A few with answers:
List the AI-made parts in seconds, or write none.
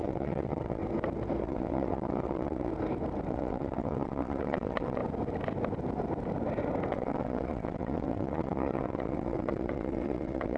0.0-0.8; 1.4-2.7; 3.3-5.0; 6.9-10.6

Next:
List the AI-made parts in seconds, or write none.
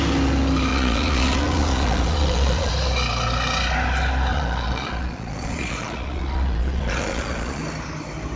0.7-2.7; 4.3-7.6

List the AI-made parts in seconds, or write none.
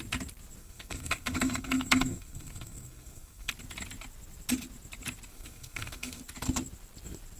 0.6-3.5; 5.3-6.2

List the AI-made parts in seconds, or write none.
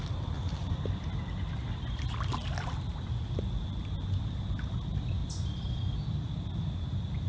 none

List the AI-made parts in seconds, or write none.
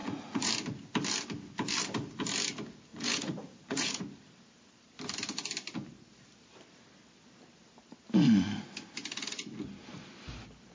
0.0-0.5; 2.9-4.0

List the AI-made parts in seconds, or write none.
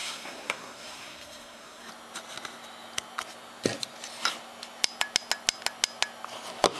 0.0-1.9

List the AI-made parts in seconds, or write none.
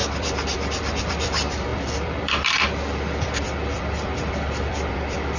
0.0-5.4